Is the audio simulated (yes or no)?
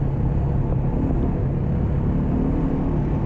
no